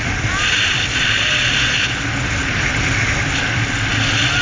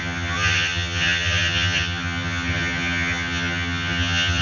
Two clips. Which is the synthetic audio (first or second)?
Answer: second